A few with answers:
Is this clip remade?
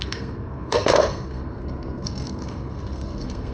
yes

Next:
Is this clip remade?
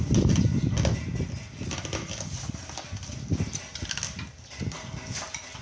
no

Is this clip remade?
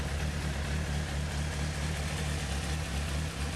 no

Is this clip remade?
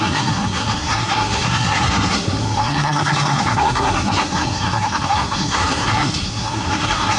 yes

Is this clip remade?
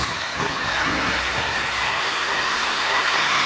yes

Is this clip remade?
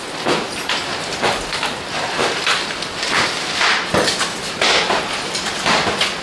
no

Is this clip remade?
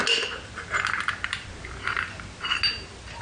no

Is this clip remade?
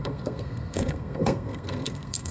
yes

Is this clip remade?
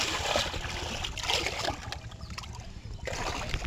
no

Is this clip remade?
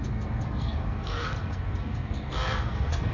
yes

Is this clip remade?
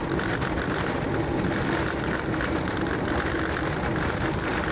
no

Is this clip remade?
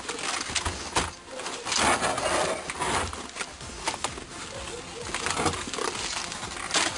no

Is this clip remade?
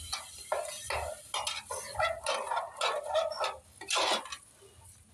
no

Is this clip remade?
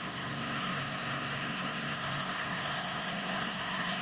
yes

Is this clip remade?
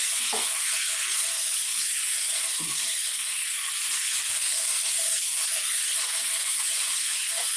yes